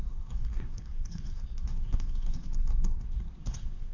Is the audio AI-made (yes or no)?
yes